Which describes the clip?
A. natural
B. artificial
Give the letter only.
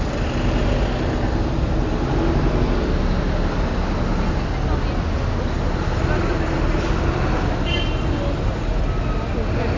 A